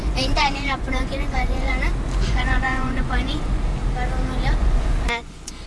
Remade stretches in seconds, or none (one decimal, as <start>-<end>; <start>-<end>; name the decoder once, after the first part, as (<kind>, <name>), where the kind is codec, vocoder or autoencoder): 0.0-1.7 (vocoder, Vocos); 2.3-3.7; 4.6-5.7